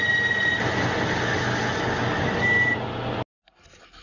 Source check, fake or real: real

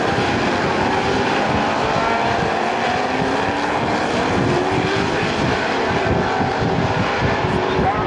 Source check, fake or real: fake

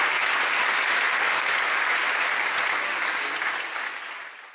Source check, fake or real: real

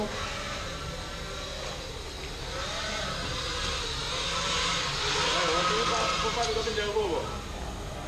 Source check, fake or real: real